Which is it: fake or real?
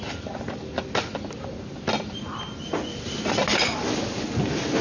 real